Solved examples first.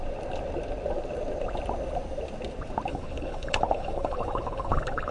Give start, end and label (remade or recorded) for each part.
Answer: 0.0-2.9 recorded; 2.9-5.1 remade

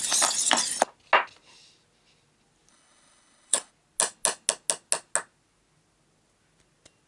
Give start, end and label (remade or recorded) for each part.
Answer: 0.0-2.7 recorded; 2.7-3.7 remade; 3.7-7.1 recorded

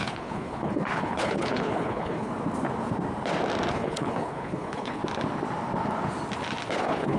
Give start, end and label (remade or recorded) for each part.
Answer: 0.0-2.3 remade; 2.3-3.7 recorded; 3.7-5.0 remade; 5.0-6.8 recorded; 6.8-7.2 remade

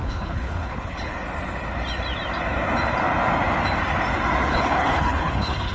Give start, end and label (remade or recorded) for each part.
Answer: 0.0-1.1 remade; 1.1-4.5 recorded; 4.5-5.7 remade

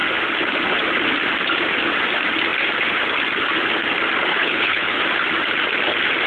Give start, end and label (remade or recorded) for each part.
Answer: 0.0-4.3 recorded; 4.3-5.0 remade; 5.0-6.3 recorded

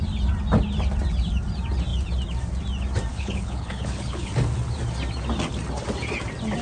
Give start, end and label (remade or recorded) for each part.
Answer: 0.0-3.1 recorded; 3.1-4.3 remade; 4.3-6.6 recorded

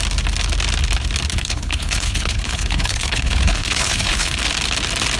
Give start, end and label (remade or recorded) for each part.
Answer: 0.0-1.3 recorded; 1.3-4.4 remade; 4.4-5.2 recorded

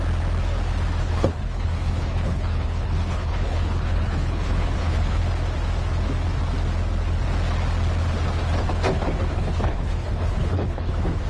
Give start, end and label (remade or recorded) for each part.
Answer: 0.0-1.0 recorded; 1.0-5.2 remade; 5.2-9.3 recorded; 9.3-10.9 remade; 10.9-11.3 recorded